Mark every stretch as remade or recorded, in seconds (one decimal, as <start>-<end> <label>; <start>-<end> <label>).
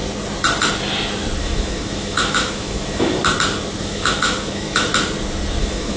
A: 0.0-1.4 recorded; 1.4-3.2 remade; 3.2-3.8 recorded; 3.8-4.9 remade; 4.9-5.6 recorded; 5.6-6.0 remade